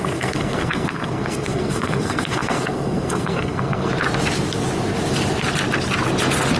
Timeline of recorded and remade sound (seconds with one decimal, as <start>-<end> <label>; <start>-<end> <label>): 0.0-3.9 remade; 3.9-6.6 recorded